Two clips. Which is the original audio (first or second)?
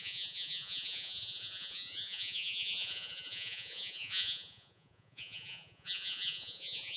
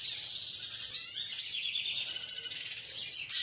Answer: second